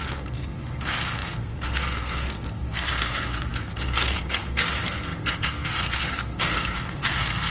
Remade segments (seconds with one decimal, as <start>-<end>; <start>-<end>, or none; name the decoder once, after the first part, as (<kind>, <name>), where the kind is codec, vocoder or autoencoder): 0.0-7.5 (codec, SNAC)